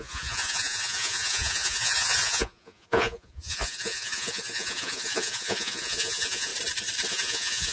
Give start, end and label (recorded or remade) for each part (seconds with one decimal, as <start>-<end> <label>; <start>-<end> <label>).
0.0-6.5 remade; 6.5-7.1 recorded; 7.1-7.7 remade